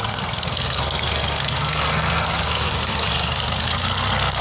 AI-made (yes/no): yes